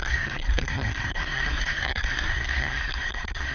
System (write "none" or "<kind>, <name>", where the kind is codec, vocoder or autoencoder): codec, SNAC